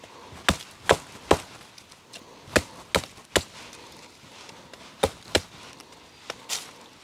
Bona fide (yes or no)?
yes